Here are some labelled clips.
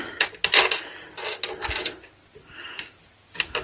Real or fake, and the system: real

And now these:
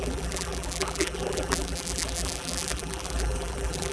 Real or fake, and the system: fake, vocoder, BigVGAN v2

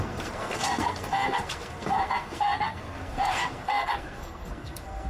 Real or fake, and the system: fake, codec, SNAC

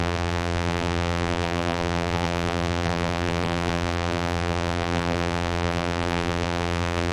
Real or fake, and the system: fake, vocoder, BigVGAN v2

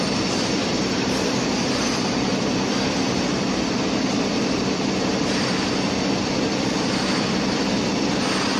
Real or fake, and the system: fake, vocoder, BigVGAN v2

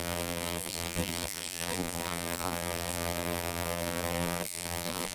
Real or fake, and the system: fake, vocoder, BigVGAN v2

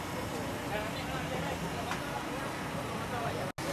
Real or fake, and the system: real